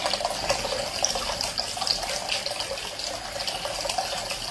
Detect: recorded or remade recorded